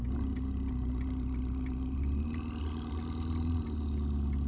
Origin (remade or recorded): recorded